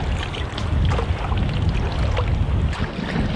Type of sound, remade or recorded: recorded